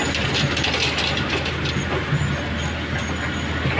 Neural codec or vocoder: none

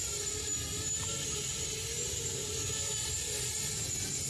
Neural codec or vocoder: none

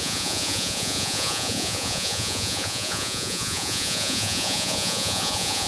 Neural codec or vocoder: vocoder, Vocos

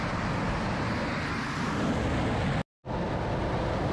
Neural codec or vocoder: none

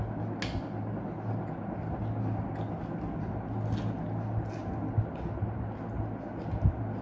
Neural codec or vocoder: none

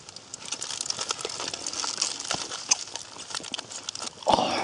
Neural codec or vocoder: none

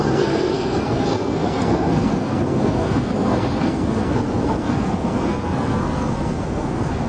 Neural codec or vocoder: codec, SNAC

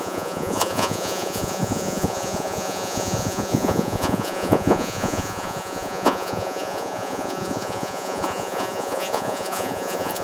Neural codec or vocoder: vocoder, Vocos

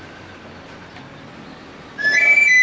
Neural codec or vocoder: none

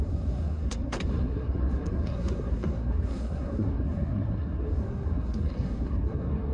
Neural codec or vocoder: codec, SNAC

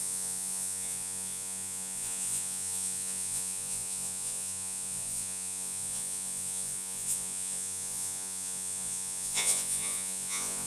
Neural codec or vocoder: vocoder, Vocos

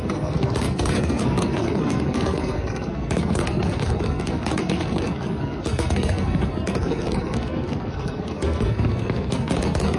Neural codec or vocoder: codec, SNAC